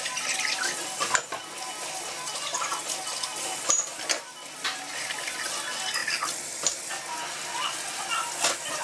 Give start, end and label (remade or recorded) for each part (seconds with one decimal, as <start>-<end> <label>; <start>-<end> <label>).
0.0-8.8 recorded